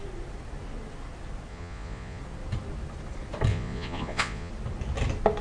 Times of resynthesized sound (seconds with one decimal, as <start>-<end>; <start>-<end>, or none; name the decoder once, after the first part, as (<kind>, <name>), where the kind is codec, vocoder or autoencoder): 1.5-2.2 (vocoder, Vocos); 3.5-4.5